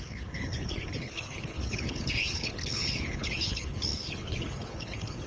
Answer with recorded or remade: remade